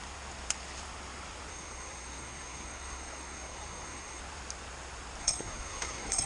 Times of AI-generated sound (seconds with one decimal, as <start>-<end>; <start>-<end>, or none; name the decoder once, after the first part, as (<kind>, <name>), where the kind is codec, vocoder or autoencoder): 1.5-4.2 (codec, SNAC); 5.2-6.3